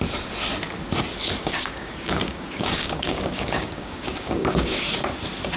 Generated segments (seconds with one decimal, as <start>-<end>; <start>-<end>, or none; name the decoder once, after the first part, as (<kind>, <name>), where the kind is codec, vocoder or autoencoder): 1.4-4.8 (codec, DAC)